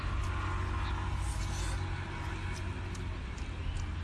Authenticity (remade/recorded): recorded